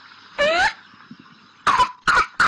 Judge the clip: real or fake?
real